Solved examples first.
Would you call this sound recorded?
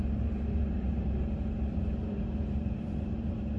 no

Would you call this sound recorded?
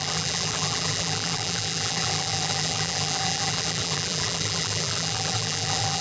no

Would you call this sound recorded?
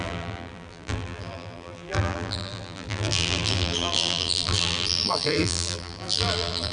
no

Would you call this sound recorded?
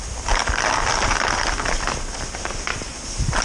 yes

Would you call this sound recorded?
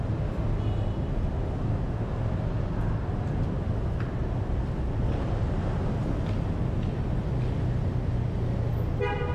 yes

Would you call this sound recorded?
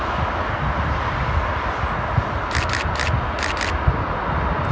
yes